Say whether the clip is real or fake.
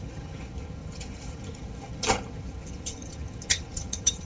fake